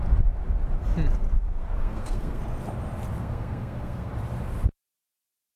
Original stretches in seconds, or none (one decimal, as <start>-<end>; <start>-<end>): 0.0-1.4; 2.4-3.1; 4.1-5.6